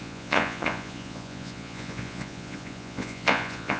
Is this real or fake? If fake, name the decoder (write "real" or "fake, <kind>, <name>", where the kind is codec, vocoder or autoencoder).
fake, vocoder, Vocos